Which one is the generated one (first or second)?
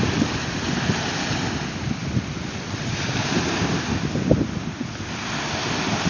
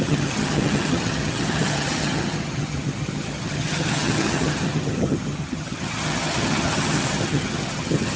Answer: second